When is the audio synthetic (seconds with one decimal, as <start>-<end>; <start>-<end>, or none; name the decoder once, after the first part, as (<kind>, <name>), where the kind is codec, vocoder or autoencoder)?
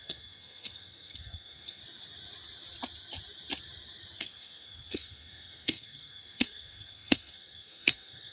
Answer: 0.0-1.8 (codec, SNAC); 4.2-8.3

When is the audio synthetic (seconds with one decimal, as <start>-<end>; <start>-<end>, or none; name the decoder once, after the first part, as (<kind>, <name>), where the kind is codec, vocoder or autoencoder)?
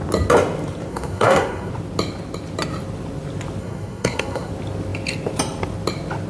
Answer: 0.9-1.7 (codec, SNAC); 3.6-4.5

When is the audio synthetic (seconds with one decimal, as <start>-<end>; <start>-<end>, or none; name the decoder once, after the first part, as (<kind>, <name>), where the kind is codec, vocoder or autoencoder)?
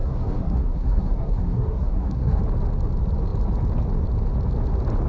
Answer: 0.0-2.4 (codec, SNAC)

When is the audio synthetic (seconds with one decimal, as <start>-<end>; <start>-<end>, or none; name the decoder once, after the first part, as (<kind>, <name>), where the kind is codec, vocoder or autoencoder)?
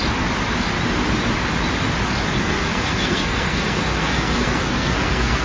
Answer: 2.4-5.4 (codec, SNAC)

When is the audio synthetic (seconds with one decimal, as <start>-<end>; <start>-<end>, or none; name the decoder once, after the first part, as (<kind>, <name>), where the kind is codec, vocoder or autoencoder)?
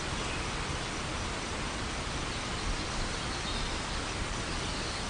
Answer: none